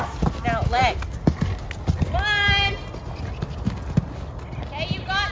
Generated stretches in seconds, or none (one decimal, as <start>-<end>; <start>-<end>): none